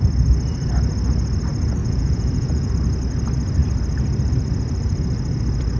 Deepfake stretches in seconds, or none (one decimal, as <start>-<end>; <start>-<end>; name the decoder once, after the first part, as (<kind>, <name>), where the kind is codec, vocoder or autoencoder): 1.8-2.7 (vocoder, Vocos)